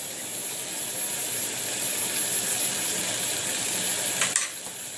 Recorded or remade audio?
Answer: recorded